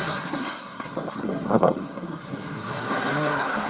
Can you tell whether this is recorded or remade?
remade